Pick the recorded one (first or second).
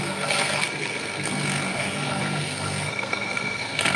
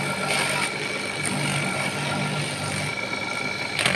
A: second